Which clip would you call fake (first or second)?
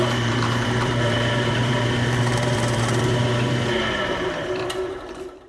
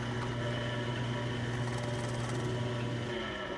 first